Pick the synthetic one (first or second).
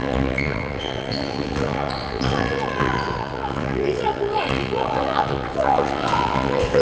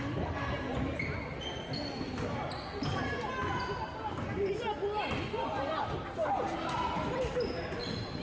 first